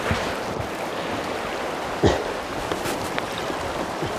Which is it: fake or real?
real